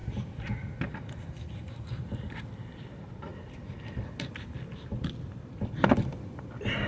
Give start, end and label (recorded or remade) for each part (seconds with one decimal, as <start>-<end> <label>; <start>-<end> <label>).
0.0-6.9 recorded